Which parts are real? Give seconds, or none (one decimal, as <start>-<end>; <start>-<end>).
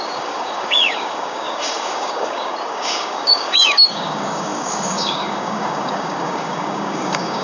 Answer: none